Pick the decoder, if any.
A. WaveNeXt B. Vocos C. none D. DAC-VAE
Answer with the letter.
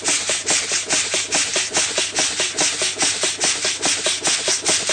C